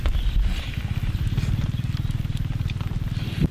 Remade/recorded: recorded